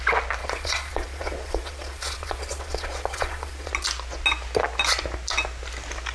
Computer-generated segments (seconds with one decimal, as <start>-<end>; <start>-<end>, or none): 0.4-3.7